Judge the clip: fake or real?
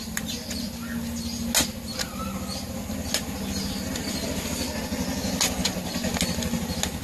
real